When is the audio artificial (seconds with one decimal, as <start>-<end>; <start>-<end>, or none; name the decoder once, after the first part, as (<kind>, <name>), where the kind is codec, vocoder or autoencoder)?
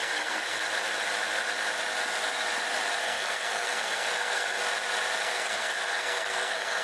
0.0-0.6 (codec, SNAC); 3.0-4.6; 5.2-6.8